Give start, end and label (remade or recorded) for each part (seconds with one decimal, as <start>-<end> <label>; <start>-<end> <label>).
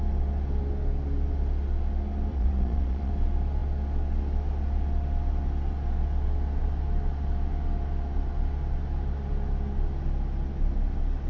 0.0-2.3 recorded; 2.3-3.1 remade; 3.1-11.3 recorded